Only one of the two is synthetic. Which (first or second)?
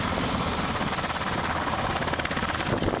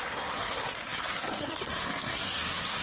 second